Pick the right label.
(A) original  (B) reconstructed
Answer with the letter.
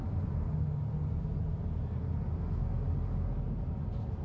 A